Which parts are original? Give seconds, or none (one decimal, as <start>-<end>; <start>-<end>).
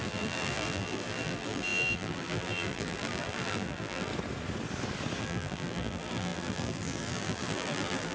4.1-5.2